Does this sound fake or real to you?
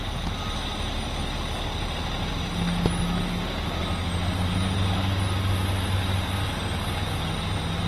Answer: real